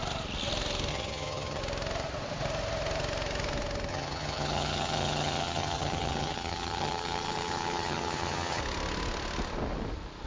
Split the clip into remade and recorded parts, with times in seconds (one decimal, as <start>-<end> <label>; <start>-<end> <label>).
0.0-0.9 recorded; 0.9-1.6 remade; 1.6-3.9 recorded; 3.9-8.6 remade; 8.6-10.3 recorded